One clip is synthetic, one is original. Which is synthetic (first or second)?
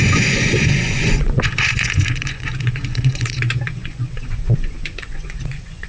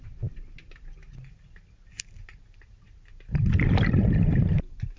first